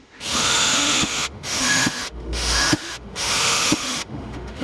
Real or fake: fake